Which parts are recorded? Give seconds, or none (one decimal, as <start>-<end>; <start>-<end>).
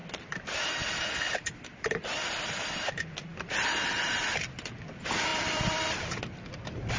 2.4-3.3; 4.8-5.3